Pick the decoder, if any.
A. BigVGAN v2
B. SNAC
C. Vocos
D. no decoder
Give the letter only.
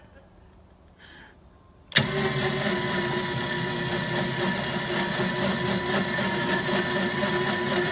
D